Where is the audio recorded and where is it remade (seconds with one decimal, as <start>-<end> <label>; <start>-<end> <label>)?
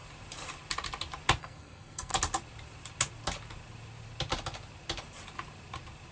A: 0.0-1.4 recorded; 1.4-2.1 remade; 2.1-6.1 recorded